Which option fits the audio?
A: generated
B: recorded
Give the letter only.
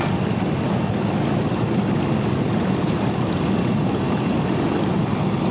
B